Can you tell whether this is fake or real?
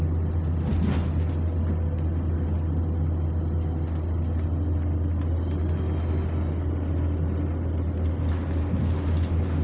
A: real